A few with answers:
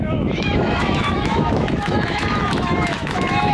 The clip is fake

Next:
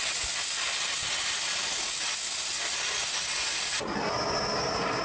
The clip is real